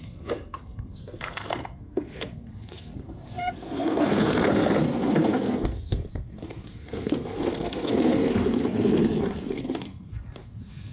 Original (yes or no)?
no